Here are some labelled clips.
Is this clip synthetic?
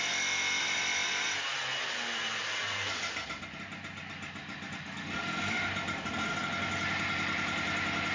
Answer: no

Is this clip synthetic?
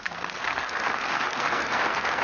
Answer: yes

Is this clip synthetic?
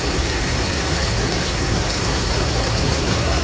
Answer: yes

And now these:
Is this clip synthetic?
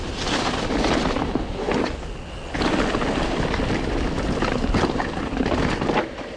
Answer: no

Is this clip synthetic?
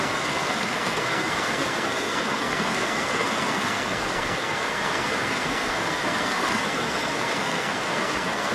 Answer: yes